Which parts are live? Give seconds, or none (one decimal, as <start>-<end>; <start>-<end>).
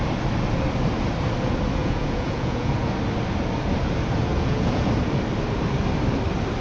0.0-1.8; 2.9-4.3; 4.9-6.6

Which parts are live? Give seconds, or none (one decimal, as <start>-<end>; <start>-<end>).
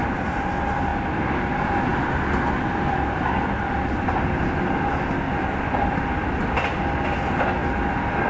0.0-8.3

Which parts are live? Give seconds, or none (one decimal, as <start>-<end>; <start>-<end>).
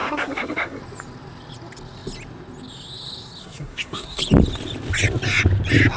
0.8-3.4; 4.2-6.0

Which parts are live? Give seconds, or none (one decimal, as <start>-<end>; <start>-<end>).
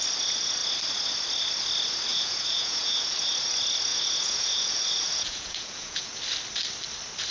0.0-2.1; 3.1-3.9; 6.2-7.3